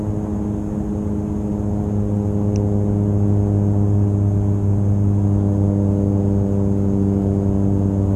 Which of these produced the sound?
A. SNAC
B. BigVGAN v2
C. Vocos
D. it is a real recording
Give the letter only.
D